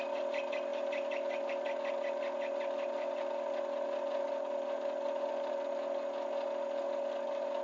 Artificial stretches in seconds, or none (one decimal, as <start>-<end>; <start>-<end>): none